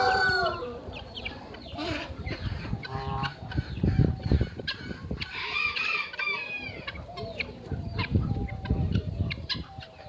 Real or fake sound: fake